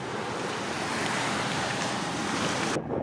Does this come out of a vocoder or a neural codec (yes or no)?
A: no